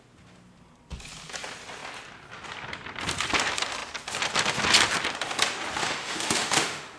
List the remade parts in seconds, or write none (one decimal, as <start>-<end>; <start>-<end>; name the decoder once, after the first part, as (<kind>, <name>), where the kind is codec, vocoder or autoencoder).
5.8-7.0 (autoencoder, DAC-VAE)